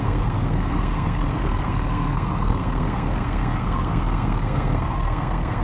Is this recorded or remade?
remade